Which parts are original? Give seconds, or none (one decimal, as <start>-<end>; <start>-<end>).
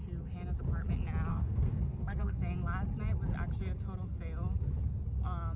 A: 0.0-1.3; 2.4-5.6